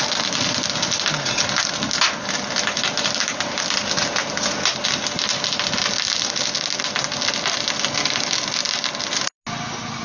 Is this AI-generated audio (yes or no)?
no